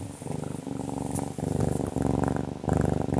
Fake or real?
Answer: real